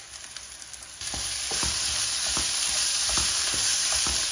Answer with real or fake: fake